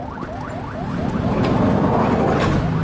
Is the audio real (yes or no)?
yes